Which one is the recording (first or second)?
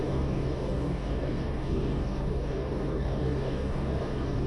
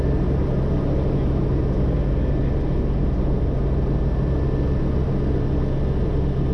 second